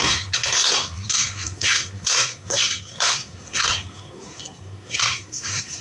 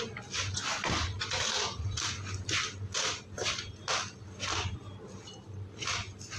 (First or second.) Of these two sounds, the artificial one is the first